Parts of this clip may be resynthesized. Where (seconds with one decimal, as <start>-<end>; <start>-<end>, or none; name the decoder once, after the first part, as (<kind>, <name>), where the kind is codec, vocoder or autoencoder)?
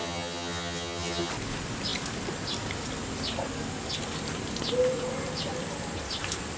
0.0-1.3 (vocoder, HiFi-GAN)